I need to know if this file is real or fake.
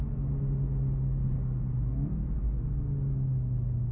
real